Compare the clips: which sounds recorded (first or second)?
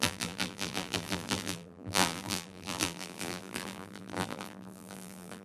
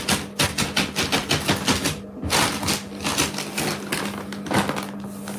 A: second